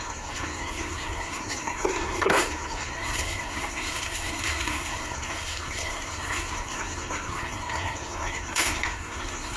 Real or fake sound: fake